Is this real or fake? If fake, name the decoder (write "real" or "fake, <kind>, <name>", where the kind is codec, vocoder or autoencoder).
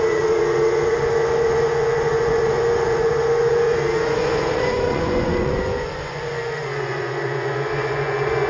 fake, vocoder, Vocos